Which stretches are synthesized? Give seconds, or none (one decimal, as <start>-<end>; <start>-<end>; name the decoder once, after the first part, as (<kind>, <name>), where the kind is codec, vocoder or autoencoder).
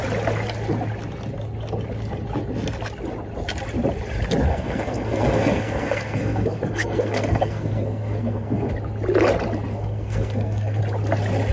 4.5-8.7 (codec, SNAC); 9.7-10.8